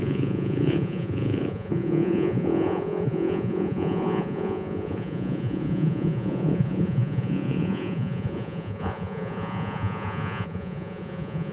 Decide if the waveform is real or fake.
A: fake